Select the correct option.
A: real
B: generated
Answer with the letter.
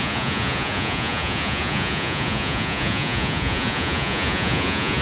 B